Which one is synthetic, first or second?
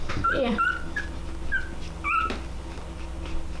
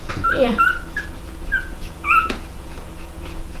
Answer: second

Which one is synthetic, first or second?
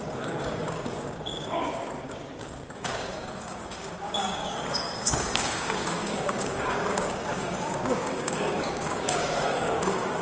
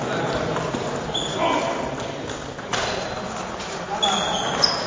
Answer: first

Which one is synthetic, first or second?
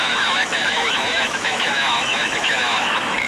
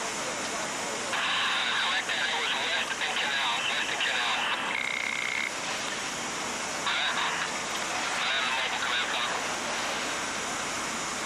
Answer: first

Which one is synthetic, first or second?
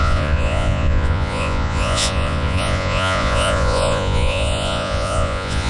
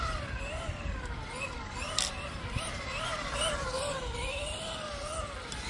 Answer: first